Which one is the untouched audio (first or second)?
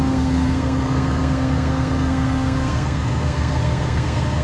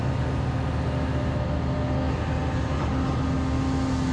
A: second